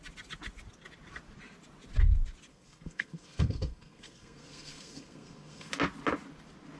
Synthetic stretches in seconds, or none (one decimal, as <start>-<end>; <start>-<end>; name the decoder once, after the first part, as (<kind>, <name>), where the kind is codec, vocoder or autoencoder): 2.5-5.7 (codec, SNAC)